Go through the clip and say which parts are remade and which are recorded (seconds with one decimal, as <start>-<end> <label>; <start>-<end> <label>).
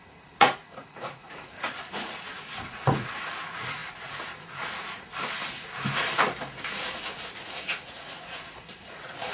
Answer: 0.0-5.1 remade; 5.1-6.7 recorded; 6.7-9.3 remade